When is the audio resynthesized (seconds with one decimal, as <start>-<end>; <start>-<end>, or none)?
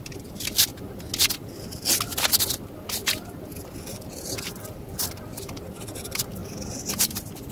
0.0-0.7; 3.4-6.4; 6.9-7.5